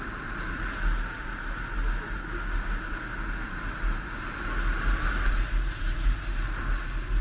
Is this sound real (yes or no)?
yes